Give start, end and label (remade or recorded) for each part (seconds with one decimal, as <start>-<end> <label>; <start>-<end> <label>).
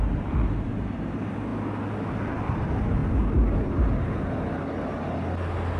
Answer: 0.0-5.8 recorded